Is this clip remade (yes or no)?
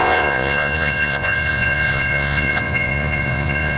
yes